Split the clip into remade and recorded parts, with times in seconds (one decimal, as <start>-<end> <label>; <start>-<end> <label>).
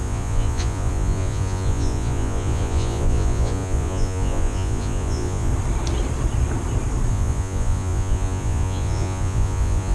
0.0-5.5 remade; 5.5-7.1 recorded; 7.1-9.9 remade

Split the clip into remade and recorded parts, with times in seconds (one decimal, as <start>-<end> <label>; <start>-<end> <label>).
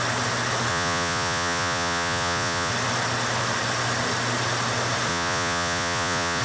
0.0-0.7 recorded; 0.7-2.7 remade; 2.7-5.1 recorded; 5.1-6.4 remade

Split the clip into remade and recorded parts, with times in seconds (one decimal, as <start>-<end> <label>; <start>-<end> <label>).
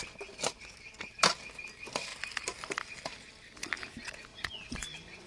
0.0-4.3 recorded; 4.3-5.3 remade